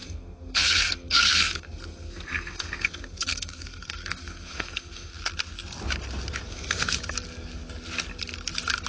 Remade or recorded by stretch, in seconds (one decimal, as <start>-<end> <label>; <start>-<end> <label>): 0.0-5.1 remade; 5.1-6.5 recorded; 6.5-7.0 remade; 7.0-8.9 recorded